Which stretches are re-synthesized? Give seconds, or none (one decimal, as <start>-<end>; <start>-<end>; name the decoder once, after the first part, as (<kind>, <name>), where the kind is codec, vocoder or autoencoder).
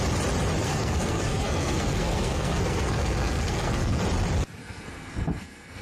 0.6-4.0 (codec, SNAC); 4.6-5.8